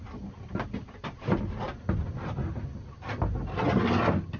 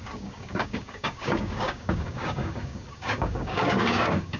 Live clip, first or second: first